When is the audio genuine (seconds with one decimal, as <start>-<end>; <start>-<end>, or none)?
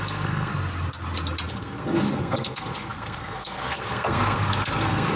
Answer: 0.5-1.5